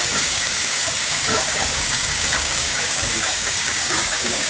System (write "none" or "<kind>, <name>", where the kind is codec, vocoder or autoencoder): codec, DAC